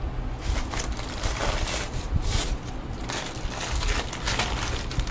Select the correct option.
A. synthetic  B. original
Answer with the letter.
B